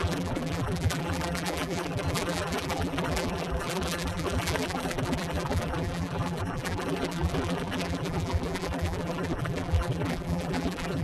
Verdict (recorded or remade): remade